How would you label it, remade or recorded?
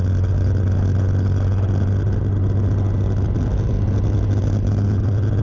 recorded